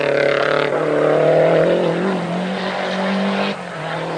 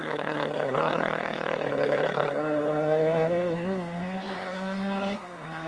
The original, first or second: first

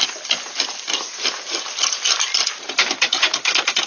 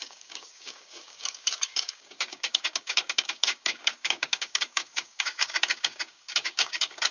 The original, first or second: first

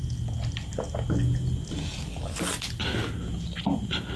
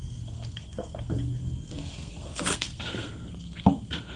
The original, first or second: first